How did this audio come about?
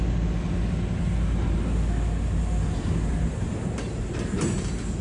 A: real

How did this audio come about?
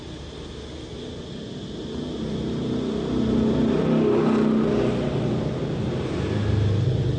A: real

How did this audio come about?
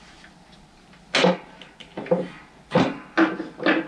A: real